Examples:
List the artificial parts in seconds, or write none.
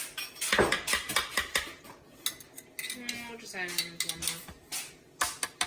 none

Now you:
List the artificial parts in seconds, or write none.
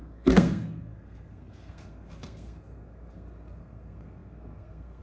0.0-5.0